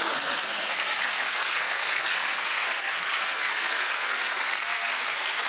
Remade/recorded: remade